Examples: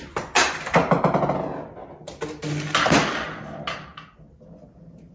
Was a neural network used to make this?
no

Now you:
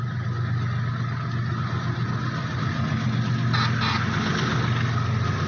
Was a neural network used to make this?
no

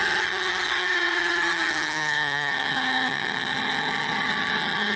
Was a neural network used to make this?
yes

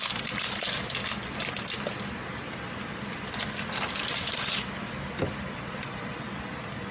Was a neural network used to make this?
no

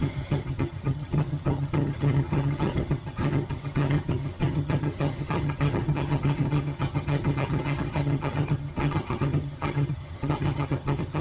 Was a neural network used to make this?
yes